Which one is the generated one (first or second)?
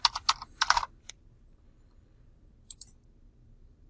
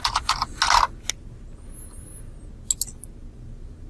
first